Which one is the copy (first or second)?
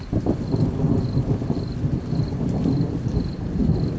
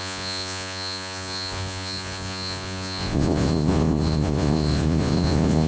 second